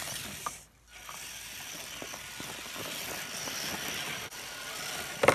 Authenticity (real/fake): real